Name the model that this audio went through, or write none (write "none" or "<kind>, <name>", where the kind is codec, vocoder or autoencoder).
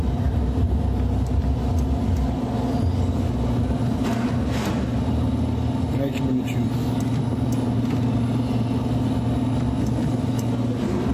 none